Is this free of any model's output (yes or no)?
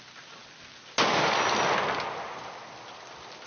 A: yes